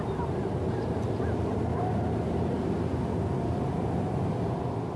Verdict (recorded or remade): recorded